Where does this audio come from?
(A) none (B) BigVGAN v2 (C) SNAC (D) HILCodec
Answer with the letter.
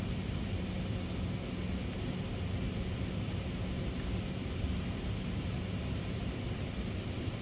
A